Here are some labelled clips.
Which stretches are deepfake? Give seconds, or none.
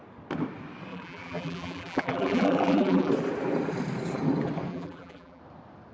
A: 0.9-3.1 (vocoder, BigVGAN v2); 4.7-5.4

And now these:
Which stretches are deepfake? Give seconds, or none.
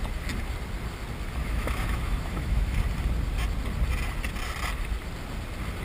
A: 1.4-2.8 (autoencoder, DAC-VAE)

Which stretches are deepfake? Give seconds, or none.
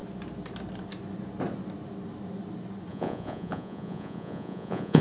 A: 2.9-5.0 (vocoder, Vocos)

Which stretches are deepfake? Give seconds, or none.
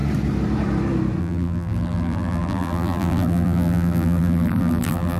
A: 1.2-5.2 (vocoder, BigVGAN v2)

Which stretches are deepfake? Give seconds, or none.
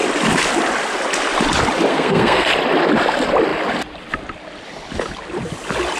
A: 1.9-2.5 (codec, SNAC)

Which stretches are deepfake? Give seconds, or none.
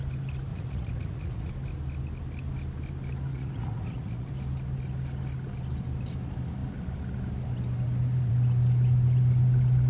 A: 0.5-1.5 (vocoder, Vocos); 3.3-4.3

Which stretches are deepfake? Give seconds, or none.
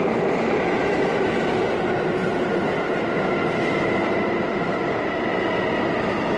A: none